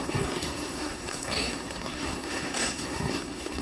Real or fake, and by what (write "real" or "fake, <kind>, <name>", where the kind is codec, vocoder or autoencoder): fake, codec, SNAC